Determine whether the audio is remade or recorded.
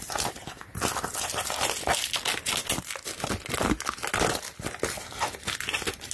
recorded